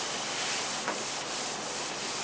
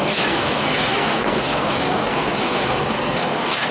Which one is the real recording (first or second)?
first